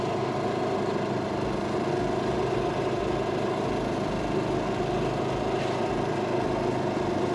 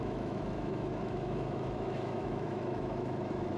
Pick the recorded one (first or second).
first